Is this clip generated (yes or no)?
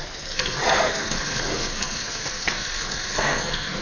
yes